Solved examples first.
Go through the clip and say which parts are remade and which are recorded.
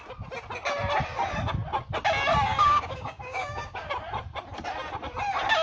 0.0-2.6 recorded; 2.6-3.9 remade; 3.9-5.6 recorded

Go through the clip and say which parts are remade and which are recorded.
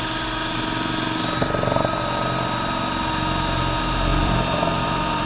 0.0-4.1 recorded; 4.1-5.3 remade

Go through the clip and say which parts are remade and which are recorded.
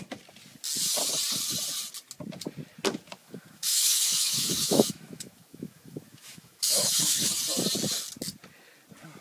0.0-3.2 recorded; 3.2-7.3 remade; 7.3-9.2 recorded